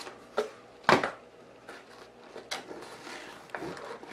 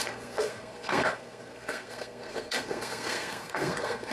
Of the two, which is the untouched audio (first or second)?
first